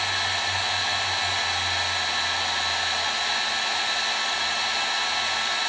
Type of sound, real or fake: real